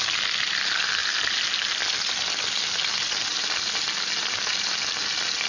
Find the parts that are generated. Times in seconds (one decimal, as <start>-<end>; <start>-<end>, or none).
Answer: none